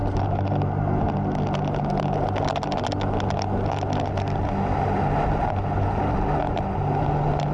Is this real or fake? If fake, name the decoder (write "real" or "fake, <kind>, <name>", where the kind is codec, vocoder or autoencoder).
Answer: real